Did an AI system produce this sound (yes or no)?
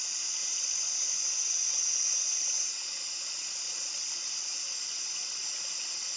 no